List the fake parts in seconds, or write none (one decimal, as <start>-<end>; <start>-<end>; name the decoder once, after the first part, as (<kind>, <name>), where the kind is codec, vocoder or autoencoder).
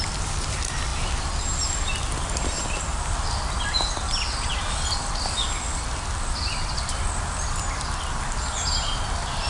none